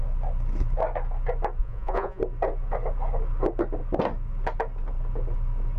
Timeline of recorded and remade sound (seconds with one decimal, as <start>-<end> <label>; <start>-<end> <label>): 0.0-1.6 recorded; 1.6-2.2 remade; 2.2-5.8 recorded